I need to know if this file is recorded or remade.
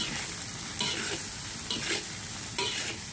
recorded